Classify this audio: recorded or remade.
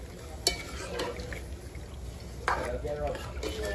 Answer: recorded